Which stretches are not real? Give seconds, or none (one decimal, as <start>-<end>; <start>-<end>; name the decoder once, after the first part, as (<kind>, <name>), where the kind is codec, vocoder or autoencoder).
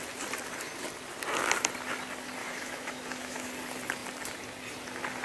2.4-3.5 (autoencoder, DAC-VAE)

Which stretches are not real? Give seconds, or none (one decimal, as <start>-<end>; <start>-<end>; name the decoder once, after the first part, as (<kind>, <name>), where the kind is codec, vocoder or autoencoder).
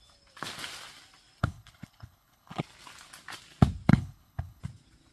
1.4-2.6 (codec, HILCodec); 3.9-4.6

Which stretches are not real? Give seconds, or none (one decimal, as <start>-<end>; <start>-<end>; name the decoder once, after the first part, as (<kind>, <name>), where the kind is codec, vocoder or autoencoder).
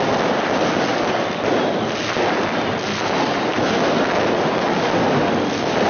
none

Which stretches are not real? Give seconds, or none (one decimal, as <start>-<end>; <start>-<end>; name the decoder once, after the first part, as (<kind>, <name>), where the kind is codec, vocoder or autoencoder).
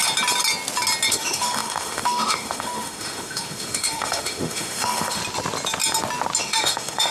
1.1-5.2 (autoencoder, DAC-VAE); 6.4-7.1